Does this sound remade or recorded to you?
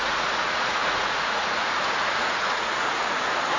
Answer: remade